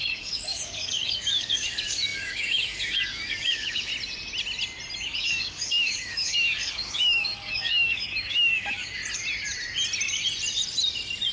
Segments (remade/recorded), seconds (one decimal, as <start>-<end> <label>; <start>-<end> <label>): 0.0-3.9 remade; 3.9-5.0 recorded; 5.0-9.0 remade; 9.0-11.3 recorded